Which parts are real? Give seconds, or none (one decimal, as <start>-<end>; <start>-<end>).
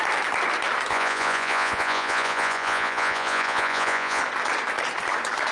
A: 0.0-0.9; 4.2-5.5